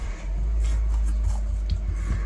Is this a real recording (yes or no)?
yes